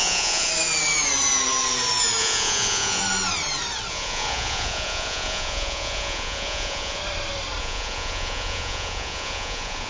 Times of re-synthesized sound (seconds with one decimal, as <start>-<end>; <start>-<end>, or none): 0.0-0.5; 2.2-3.0; 3.9-7.0; 7.6-9.9